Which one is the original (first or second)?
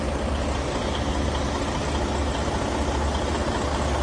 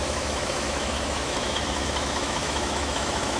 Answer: first